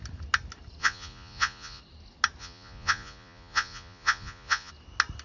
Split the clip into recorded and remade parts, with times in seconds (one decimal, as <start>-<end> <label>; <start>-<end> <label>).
0.0-0.8 recorded; 0.8-1.8 remade; 1.8-2.4 recorded; 2.4-4.7 remade; 4.7-5.2 recorded